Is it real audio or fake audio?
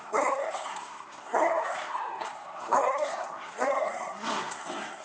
fake